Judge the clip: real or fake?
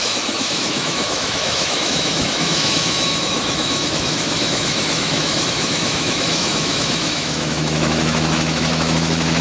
fake